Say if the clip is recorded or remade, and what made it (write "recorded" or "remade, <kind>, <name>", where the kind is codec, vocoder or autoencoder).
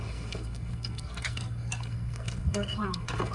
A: remade, codec, SNAC